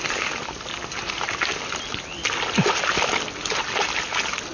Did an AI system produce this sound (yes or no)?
no